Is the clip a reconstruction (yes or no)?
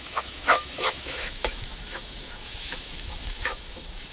yes